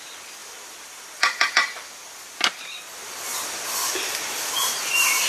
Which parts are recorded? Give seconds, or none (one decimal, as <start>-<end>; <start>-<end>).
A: 0.0-0.4; 2.2-3.3; 4.1-5.3